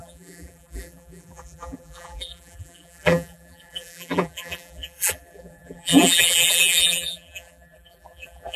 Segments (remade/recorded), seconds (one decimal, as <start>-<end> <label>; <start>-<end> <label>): 0.0-8.6 remade